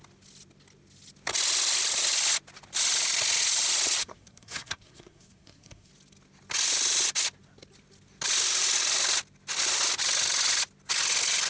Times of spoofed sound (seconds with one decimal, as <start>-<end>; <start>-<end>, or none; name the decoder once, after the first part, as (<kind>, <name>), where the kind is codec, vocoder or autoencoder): 4.0-5.9 (codec, SNAC)